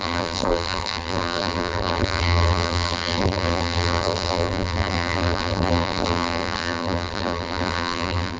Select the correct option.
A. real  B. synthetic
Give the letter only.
B